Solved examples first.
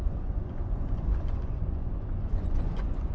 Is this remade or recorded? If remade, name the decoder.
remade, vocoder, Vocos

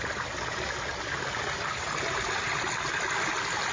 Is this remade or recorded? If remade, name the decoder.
recorded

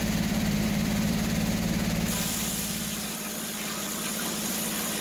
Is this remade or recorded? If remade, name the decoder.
remade, vocoder, BigVGAN v2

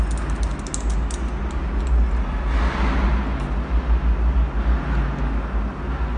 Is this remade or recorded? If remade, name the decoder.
recorded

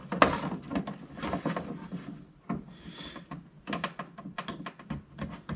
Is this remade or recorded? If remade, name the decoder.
recorded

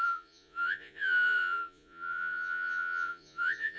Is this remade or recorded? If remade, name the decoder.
remade, vocoder, Vocos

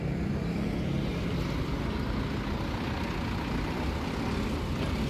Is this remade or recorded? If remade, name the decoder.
recorded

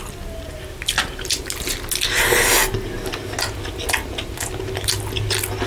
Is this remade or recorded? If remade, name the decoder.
recorded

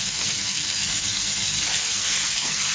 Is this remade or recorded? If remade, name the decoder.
remade, codec, SNAC